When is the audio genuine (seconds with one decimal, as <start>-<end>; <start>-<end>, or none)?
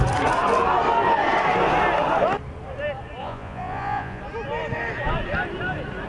0.0-3.2; 4.2-6.1